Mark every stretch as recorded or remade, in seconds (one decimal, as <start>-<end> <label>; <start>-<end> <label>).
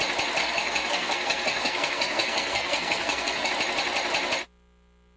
0.0-0.4 recorded; 0.4-3.5 remade; 3.5-5.2 recorded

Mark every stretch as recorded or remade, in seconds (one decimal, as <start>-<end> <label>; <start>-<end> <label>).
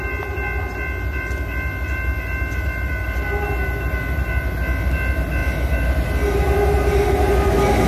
0.0-7.9 recorded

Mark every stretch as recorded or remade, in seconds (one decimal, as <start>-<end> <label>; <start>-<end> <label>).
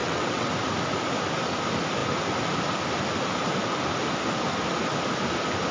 0.0-0.5 remade; 0.5-5.7 recorded